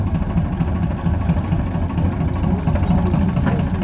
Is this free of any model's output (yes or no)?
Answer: yes